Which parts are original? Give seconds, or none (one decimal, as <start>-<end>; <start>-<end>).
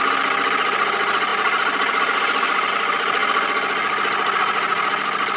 0.0-5.4